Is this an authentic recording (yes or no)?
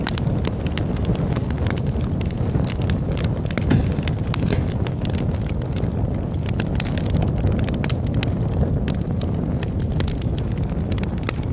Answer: yes